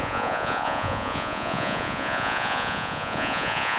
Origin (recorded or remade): remade